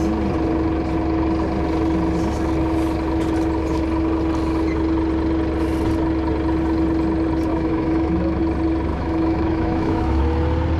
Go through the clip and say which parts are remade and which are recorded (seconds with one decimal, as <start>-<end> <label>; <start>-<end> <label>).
0.0-7.5 recorded; 7.5-8.4 remade; 8.4-8.9 recorded; 8.9-10.2 remade; 10.2-10.8 recorded